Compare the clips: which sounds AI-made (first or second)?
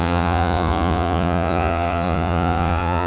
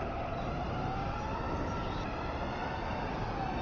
first